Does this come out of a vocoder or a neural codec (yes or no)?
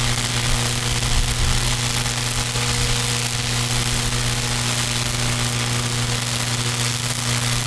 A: no